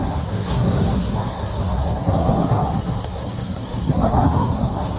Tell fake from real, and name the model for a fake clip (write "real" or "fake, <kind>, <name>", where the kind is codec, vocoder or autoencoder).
fake, codec, SNAC